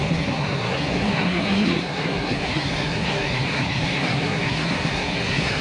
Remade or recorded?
remade